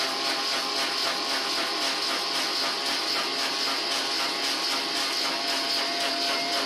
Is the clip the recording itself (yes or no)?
yes